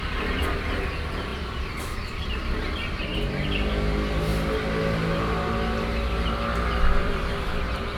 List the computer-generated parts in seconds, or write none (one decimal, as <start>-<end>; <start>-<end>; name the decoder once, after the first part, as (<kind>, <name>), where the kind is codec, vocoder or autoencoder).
7.0-8.0 (vocoder, BigVGAN v2)

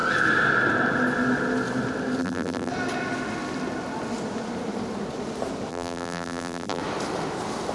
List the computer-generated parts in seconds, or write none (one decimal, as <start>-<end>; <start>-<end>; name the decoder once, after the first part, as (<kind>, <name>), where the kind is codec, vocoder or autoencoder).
2.2-2.7 (vocoder, BigVGAN v2); 5.7-6.8

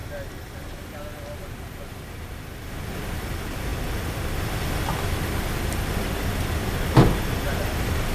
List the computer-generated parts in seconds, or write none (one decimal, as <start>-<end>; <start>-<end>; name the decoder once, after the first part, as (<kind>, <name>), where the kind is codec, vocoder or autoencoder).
none

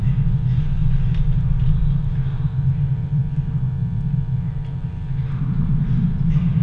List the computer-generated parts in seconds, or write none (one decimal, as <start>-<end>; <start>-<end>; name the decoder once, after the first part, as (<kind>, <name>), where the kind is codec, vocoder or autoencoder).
none

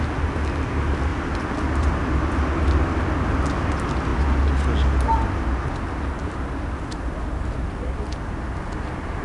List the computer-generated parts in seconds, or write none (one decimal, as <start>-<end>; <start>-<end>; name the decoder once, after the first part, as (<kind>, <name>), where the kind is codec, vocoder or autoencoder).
1.1-1.9 (vocoder, BigVGAN v2)

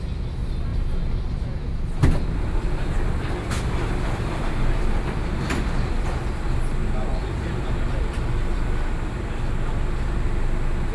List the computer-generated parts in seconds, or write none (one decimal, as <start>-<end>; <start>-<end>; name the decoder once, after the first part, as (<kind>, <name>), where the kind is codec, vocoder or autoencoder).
0.7-6.0 (vocoder, BigVGAN v2); 7.2-8.9

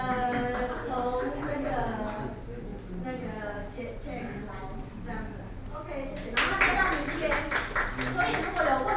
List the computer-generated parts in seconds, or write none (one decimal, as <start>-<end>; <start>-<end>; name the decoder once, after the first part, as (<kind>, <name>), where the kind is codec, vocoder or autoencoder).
none

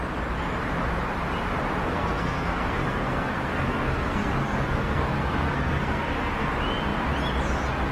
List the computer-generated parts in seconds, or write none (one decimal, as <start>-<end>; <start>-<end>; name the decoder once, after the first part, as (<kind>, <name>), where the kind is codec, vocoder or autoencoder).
1.8-6.5 (codec, SNAC)